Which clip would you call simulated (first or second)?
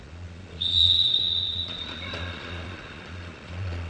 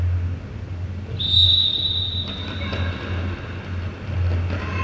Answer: first